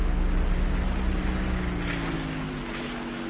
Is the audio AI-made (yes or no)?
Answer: no